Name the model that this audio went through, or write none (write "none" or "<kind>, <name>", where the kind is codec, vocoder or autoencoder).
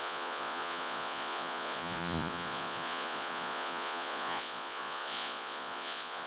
vocoder, Vocos